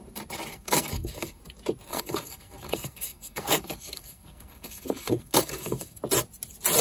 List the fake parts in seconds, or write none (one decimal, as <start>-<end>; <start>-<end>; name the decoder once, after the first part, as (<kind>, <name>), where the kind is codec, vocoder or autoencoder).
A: 0.5-1.4 (codec, SNAC); 1.9-6.0